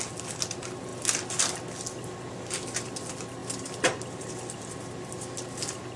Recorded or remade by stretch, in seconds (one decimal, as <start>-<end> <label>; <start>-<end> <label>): 0.0-6.0 recorded